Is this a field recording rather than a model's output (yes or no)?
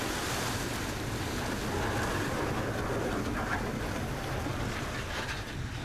yes